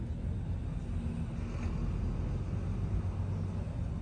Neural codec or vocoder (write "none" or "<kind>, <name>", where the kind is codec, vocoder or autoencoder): none